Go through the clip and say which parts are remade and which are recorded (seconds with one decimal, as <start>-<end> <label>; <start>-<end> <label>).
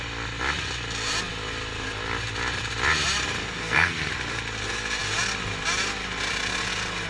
0.0-3.4 recorded; 3.4-4.1 remade; 4.1-7.1 recorded